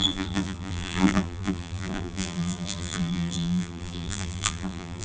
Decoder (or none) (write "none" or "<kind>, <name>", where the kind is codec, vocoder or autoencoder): vocoder, BigVGAN v2